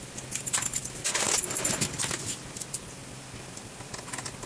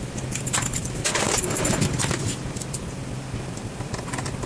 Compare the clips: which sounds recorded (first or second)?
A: first